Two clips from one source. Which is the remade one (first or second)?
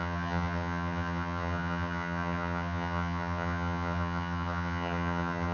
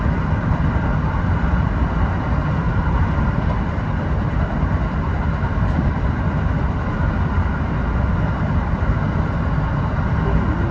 first